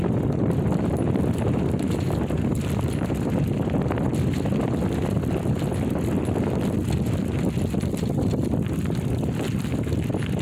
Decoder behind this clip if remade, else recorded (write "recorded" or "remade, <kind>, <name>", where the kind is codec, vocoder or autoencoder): recorded